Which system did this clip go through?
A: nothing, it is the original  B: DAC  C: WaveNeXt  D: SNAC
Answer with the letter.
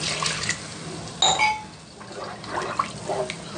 A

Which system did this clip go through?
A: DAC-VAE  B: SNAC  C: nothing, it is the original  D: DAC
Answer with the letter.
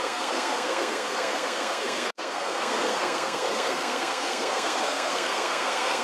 B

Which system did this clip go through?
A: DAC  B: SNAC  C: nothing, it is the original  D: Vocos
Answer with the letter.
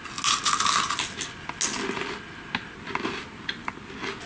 C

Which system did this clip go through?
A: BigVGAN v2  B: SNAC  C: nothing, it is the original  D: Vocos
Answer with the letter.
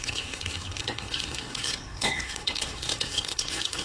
B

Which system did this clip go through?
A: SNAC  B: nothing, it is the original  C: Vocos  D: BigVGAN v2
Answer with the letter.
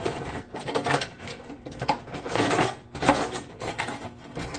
A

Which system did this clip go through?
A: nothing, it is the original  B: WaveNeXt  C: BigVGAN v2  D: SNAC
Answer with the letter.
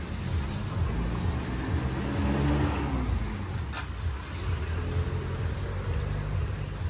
A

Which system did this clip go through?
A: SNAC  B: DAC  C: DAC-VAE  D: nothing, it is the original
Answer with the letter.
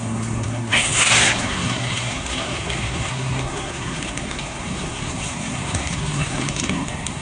A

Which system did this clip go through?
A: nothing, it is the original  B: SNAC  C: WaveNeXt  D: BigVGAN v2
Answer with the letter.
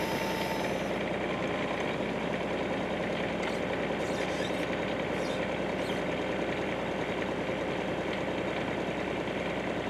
A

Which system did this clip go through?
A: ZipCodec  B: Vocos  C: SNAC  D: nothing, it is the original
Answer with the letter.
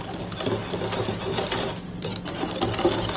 D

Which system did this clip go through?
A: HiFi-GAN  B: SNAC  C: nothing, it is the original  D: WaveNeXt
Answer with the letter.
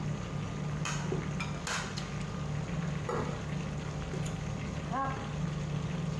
C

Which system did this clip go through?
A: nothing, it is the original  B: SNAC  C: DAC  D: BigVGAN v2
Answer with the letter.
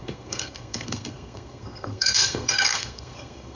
B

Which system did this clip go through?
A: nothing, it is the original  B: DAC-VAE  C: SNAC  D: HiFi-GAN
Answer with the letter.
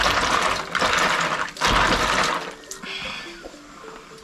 A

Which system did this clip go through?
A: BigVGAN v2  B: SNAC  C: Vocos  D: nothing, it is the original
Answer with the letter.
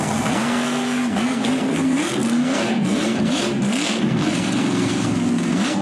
B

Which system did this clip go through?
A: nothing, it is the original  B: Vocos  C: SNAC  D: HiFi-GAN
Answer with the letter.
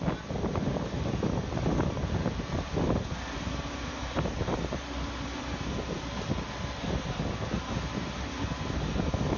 A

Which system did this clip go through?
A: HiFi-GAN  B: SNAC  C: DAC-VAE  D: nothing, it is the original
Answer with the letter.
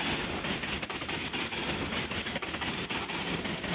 D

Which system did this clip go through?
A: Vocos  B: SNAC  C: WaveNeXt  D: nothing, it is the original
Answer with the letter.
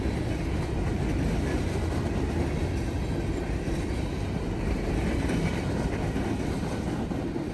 D